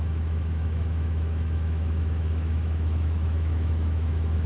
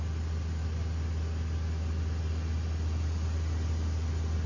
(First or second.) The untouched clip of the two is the second